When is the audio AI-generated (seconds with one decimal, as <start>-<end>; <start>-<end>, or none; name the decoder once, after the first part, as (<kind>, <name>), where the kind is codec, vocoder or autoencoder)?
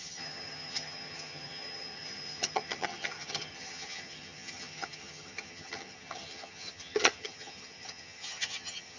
0.0-9.0 (vocoder, HiFi-GAN)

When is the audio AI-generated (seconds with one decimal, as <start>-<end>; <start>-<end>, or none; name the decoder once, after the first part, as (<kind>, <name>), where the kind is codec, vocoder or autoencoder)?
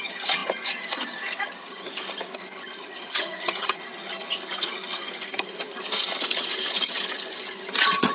0.0-8.1 (vocoder, HiFi-GAN)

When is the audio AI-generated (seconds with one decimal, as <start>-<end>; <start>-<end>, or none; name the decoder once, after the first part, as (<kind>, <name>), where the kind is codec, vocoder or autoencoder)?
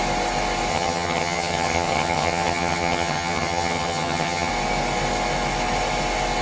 0.7-4.5 (vocoder, HiFi-GAN)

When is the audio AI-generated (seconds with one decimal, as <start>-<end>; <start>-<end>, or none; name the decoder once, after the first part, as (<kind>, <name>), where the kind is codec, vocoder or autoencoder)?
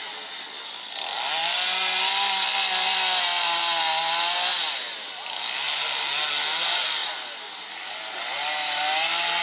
none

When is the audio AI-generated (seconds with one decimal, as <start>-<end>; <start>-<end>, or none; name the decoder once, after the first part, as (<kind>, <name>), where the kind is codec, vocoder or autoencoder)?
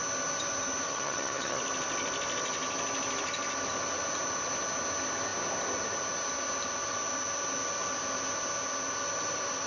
0.9-1.6 (vocoder, HiFi-GAN)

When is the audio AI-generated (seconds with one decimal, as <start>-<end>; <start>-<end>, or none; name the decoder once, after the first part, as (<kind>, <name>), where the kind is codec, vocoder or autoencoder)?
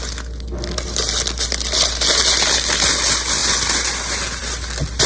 none